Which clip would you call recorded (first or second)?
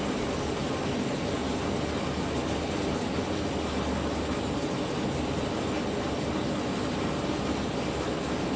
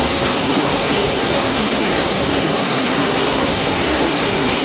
first